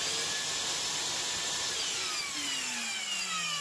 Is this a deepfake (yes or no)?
no